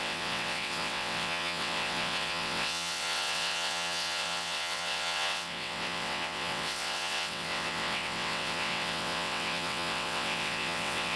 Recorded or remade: remade